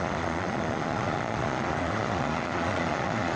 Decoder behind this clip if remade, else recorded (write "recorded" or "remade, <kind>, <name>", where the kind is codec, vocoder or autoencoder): remade, vocoder, Vocos